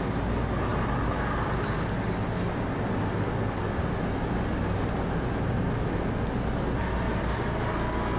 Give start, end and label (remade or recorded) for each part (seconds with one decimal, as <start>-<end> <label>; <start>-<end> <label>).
0.0-8.2 recorded